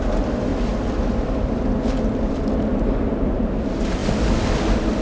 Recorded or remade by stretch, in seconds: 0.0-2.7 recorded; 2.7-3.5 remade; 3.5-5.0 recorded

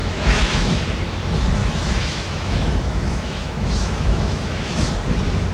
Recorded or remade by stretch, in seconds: 0.0-0.8 remade; 0.8-1.6 recorded; 1.6-4.9 remade; 4.9-5.5 recorded